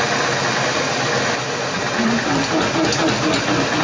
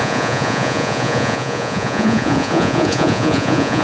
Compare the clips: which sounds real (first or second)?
first